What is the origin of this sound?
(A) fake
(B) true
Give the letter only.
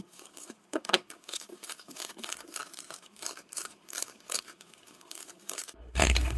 A